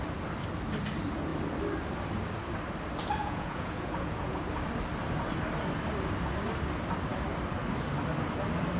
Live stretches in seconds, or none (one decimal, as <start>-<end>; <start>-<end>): 0.0-3.2; 4.4-8.8